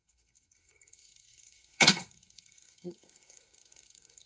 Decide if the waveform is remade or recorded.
remade